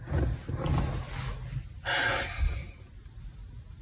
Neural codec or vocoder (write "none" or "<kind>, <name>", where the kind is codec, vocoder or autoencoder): none